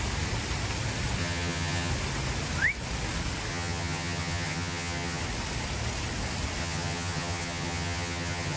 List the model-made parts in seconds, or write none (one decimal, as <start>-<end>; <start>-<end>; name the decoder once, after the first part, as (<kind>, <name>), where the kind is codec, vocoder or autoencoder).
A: 1.2-1.9 (vocoder, HiFi-GAN); 3.5-5.2; 6.6-8.6